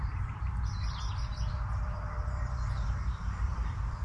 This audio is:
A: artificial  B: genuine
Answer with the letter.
B